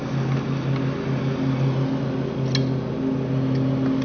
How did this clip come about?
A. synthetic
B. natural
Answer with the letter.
B